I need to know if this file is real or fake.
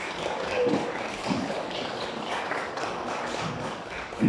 fake